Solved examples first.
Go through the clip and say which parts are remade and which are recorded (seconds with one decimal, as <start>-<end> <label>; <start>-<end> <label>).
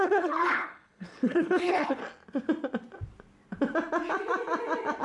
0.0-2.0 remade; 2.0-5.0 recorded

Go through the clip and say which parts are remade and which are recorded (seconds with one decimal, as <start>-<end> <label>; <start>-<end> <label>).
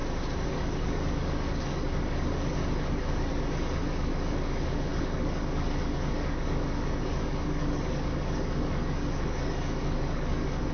0.0-0.5 recorded; 0.5-10.7 remade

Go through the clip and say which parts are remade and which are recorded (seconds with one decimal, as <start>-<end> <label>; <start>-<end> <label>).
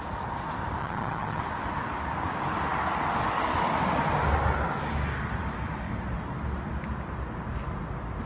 0.0-0.8 recorded; 0.8-1.4 remade; 1.4-8.3 recorded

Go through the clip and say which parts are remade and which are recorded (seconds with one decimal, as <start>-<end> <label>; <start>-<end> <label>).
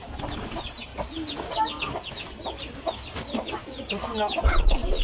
0.0-5.0 recorded